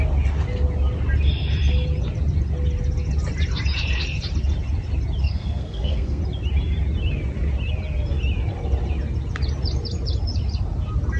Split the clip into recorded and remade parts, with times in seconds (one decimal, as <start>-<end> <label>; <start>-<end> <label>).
0.0-5.2 recorded; 5.2-6.2 remade; 6.2-11.2 recorded